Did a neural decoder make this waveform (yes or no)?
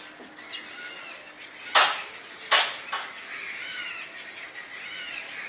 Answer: no